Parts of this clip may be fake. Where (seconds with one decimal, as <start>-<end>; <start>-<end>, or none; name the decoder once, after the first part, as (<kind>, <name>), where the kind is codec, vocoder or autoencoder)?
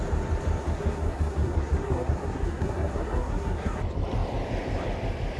0.6-3.8 (codec, SNAC)